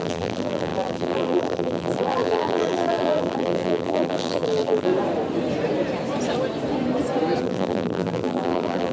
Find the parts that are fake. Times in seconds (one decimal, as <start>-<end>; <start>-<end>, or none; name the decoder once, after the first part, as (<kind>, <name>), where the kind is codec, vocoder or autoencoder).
0.0-4.9 (vocoder, BigVGAN v2); 7.4-8.9

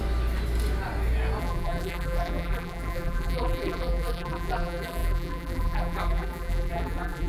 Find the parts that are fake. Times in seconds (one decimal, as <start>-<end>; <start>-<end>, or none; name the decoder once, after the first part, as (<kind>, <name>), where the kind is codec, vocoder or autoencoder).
1.4-7.3 (vocoder, BigVGAN v2)